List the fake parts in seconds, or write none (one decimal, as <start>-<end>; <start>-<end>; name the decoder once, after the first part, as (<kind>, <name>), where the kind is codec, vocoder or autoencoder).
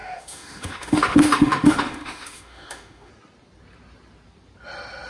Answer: 0.0-3.1 (autoencoder, DAC-VAE)